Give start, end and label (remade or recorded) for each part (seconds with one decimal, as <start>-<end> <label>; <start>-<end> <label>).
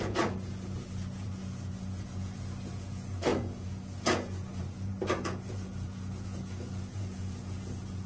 0.0-8.1 remade